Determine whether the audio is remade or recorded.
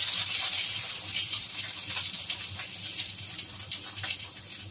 recorded